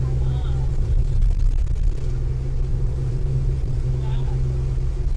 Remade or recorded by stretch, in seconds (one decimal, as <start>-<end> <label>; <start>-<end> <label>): 0.0-0.7 recorded; 0.7-1.6 remade; 1.6-2.7 recorded; 2.7-3.9 remade; 3.9-5.2 recorded